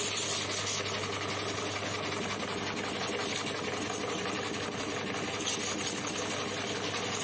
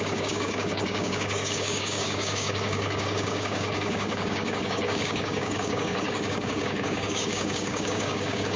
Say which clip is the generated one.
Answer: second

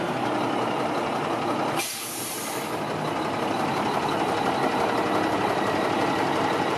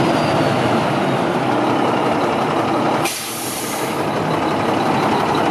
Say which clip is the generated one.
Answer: second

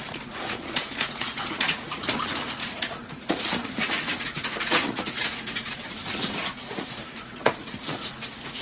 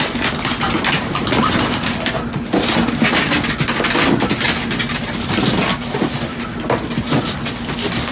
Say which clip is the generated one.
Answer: first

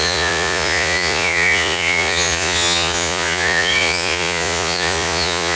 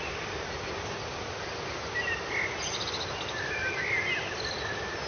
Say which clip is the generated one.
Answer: first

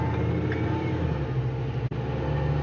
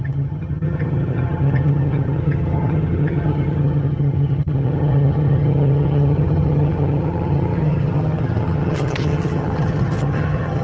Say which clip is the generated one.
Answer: second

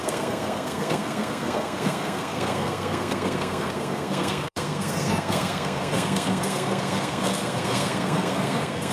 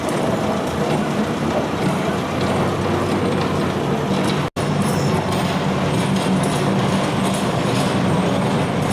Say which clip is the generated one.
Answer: first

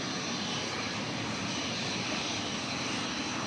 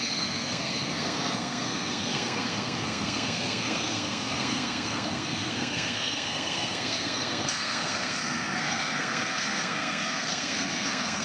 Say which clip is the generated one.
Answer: second